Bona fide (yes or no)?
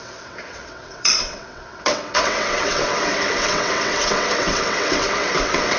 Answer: no